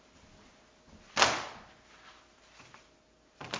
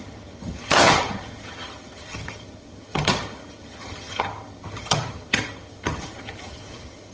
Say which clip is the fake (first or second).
second